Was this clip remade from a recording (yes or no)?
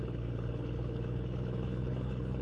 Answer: yes